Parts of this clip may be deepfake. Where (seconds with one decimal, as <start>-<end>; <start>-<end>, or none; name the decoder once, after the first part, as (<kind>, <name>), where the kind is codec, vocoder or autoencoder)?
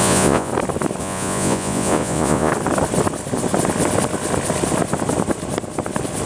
0.0-0.5 (vocoder, Vocos); 1.0-2.5